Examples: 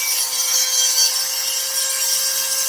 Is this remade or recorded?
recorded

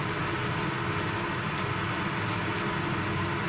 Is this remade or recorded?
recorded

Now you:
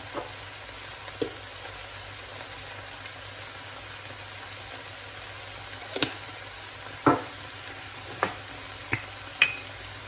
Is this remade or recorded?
recorded